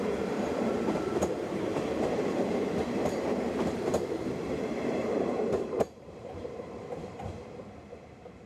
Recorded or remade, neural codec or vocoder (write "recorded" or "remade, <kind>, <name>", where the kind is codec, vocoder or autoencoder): remade, vocoder, BigVGAN v2